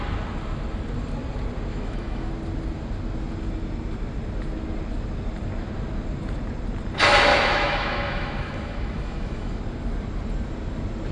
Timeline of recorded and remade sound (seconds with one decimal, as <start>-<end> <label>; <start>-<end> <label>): 0.0-1.7 recorded; 1.7-2.3 remade; 2.3-7.3 recorded; 7.3-9.6 remade; 9.6-11.1 recorded